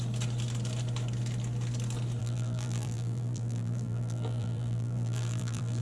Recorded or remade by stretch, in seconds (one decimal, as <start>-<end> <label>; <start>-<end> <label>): 0.0-2.2 recorded; 2.2-5.8 remade